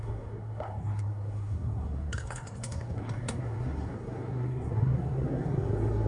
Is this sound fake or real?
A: fake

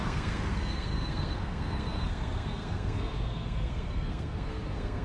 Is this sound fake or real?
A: fake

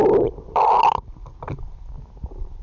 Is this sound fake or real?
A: real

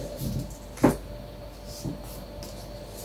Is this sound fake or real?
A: real